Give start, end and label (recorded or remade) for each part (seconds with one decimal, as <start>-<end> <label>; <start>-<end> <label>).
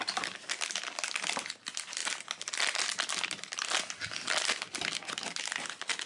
0.0-6.1 recorded